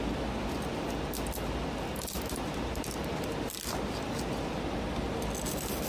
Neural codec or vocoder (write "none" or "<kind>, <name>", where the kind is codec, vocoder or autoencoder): none